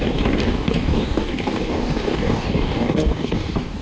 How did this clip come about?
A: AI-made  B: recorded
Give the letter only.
A